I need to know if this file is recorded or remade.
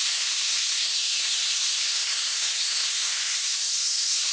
remade